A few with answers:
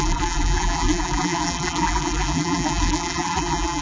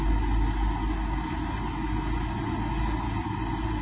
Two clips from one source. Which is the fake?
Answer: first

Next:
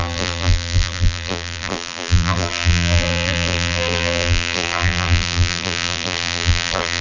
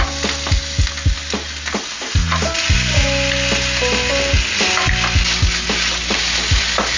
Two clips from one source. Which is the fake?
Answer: first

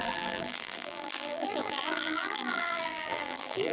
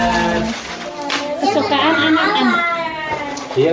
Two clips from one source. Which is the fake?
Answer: first